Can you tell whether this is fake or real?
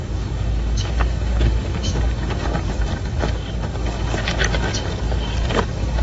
fake